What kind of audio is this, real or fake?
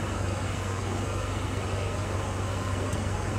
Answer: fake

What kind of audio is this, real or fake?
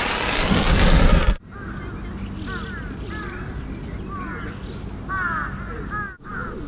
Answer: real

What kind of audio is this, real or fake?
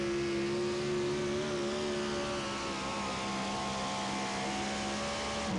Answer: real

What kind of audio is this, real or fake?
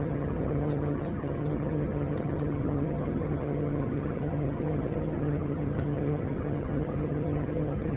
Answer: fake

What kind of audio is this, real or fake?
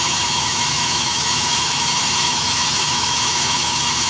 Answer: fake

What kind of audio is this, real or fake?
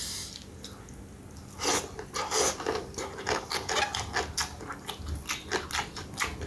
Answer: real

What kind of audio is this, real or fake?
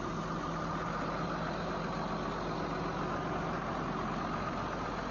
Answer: real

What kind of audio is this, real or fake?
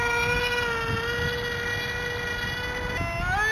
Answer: real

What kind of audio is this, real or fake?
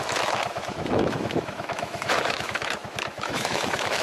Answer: fake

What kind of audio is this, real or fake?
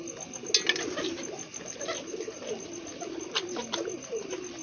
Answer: real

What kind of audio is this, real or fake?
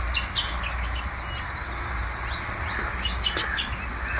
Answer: real